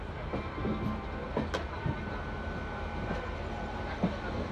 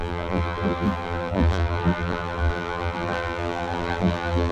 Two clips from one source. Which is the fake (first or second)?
second